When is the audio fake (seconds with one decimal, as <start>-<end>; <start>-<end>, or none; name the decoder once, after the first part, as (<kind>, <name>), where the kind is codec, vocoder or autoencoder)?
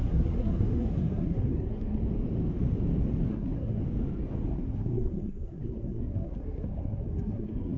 0.0-2.0 (codec, SNAC); 3.3-3.8; 4.5-7.8